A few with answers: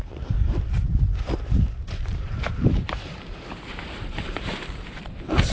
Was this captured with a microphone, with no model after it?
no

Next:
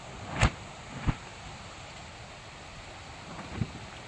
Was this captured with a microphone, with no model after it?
yes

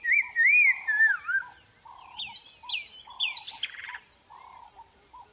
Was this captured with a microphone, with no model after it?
yes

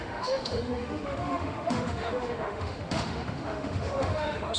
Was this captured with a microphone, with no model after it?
no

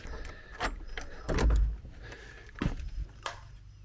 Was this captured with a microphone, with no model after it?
yes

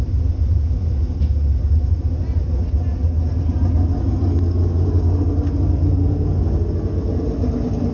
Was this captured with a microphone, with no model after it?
yes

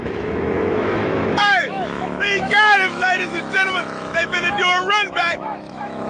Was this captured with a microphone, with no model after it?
no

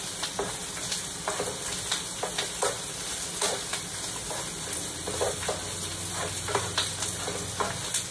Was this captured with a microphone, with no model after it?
yes